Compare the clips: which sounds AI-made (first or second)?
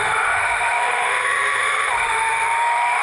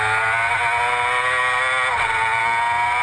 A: first